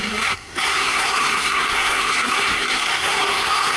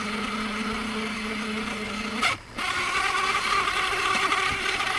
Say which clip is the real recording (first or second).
second